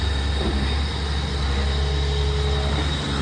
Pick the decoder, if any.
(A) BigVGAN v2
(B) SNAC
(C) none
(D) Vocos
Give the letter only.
C